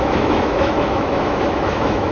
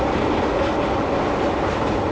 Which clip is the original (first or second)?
second